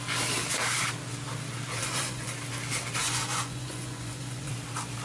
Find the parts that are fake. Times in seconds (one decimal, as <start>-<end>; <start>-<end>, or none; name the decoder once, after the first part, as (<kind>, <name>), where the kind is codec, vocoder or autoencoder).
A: 1.8-2.3 (vocoder, Vocos); 3.0-4.5